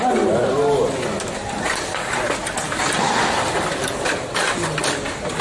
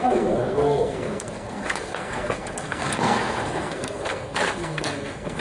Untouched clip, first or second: first